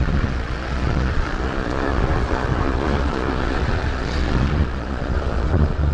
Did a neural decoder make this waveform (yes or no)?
yes